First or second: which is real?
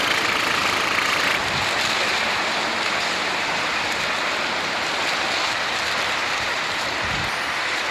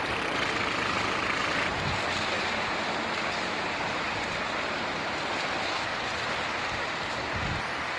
second